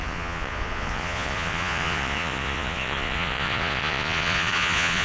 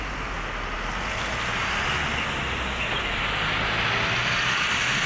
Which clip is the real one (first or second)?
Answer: second